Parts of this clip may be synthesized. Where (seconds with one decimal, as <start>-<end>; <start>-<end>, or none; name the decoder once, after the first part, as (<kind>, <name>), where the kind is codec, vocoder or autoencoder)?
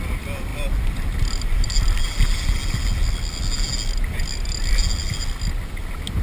none